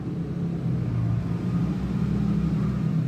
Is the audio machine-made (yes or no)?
no